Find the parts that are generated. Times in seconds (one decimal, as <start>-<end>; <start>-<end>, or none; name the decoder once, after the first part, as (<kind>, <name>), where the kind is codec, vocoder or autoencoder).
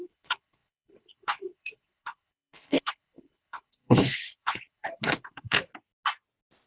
0.0-5.7 (codec, HILCodec)